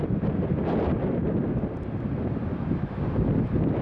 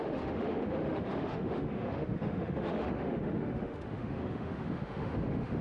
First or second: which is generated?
second